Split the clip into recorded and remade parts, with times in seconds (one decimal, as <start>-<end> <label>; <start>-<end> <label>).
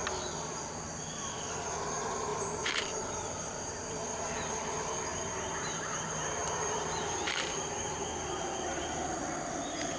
0.0-2.3 recorded; 2.3-4.1 remade; 4.1-5.1 recorded; 5.1-8.5 remade; 8.5-10.0 recorded